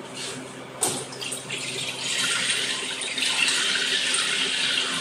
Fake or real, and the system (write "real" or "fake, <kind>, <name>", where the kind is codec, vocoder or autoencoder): fake, vocoder, BigVGAN v2